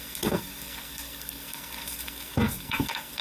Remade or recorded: remade